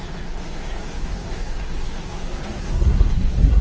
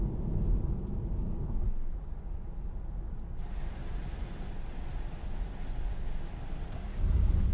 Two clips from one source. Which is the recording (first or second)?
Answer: second